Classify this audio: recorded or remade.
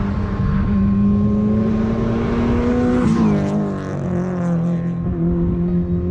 recorded